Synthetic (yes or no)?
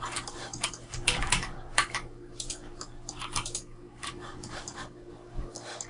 yes